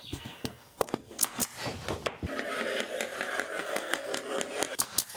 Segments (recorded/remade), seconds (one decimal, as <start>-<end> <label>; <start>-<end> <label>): 0.0-1.4 remade; 1.4-3.6 recorded; 3.6-4.1 remade; 4.1-4.7 recorded; 4.7-5.2 remade